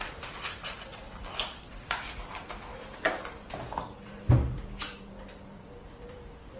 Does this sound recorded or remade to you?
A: remade